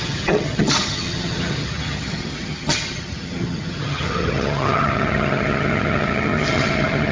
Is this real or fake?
fake